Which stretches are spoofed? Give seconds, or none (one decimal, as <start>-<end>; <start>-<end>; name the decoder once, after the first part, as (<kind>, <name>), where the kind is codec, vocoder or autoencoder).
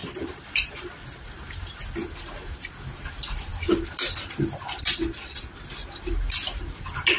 0.0-1.8 (vocoder, BigVGAN v2)